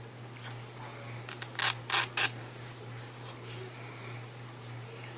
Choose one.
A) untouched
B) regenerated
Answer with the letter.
A